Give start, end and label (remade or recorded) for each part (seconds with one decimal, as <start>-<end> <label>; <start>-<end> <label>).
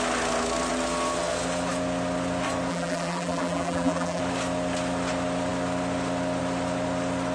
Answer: 0.0-2.7 recorded; 2.7-4.2 remade; 4.2-7.3 recorded